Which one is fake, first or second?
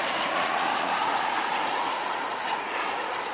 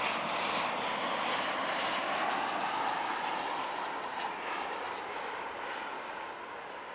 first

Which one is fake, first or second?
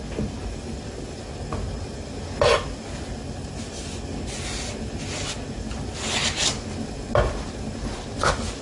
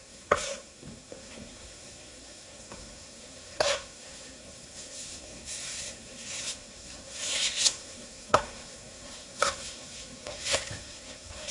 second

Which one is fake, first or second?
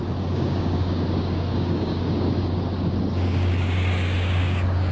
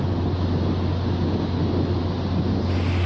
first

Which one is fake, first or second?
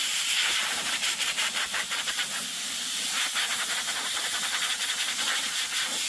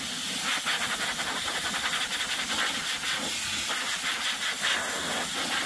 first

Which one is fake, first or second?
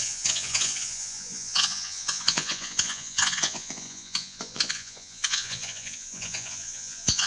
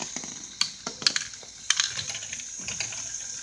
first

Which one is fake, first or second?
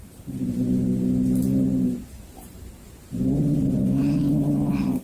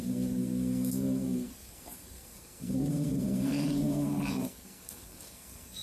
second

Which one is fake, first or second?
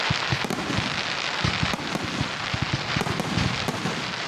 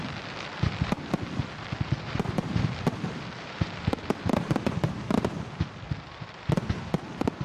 second